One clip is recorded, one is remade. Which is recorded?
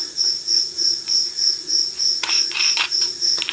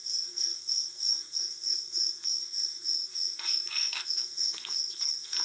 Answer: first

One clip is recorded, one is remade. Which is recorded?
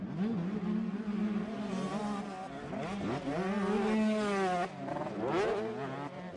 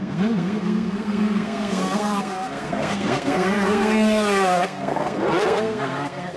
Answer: first